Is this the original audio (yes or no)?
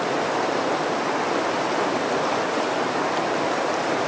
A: yes